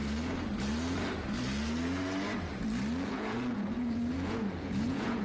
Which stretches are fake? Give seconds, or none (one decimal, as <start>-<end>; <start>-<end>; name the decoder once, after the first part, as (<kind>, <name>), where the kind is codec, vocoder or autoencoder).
3.1-5.2 (vocoder, Vocos)